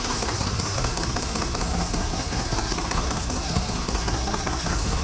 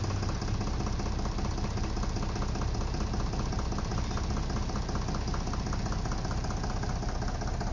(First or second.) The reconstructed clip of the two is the first